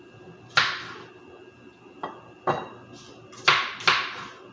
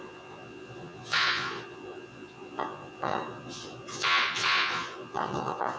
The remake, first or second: second